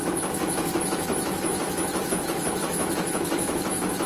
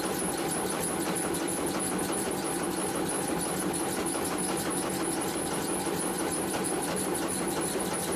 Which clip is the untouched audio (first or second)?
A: second